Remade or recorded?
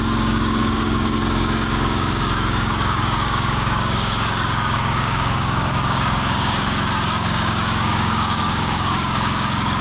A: remade